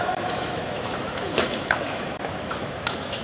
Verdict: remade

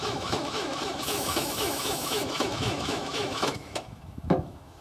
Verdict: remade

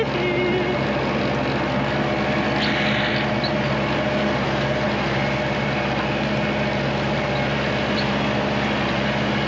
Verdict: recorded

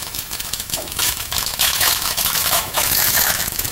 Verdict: remade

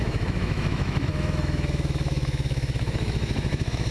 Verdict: remade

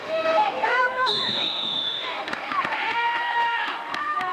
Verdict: remade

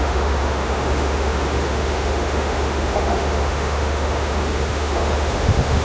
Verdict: remade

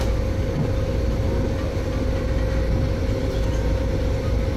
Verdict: recorded